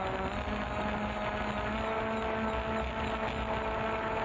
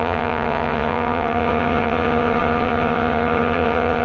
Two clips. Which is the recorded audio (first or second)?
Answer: first